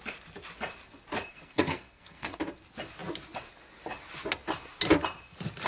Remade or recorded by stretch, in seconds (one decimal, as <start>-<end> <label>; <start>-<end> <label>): 0.0-1.3 recorded; 1.3-2.4 remade; 2.4-5.7 recorded

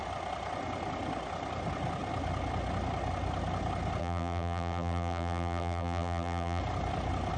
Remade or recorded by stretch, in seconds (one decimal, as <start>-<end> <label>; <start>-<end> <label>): 0.0-4.0 recorded; 4.0-6.6 remade; 6.6-7.4 recorded